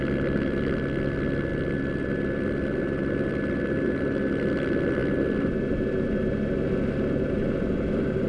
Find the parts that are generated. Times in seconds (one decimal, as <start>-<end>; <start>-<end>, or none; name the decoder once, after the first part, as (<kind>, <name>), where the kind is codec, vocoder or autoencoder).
none